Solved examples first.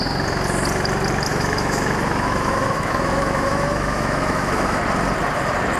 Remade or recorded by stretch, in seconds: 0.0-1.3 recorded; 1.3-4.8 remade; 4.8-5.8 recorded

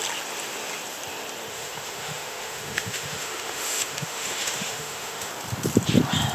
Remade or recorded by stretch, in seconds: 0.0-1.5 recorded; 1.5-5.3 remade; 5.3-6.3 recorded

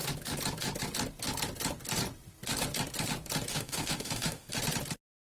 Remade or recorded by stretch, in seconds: 0.0-3.5 recorded; 3.5-4.5 remade; 4.5-5.3 recorded

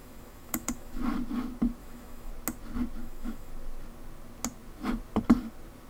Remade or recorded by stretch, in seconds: 0.0-1.0 remade; 1.0-1.8 recorded; 1.8-2.3 remade; 2.3-3.0 recorded; 3.0-3.5 remade; 3.5-5.9 recorded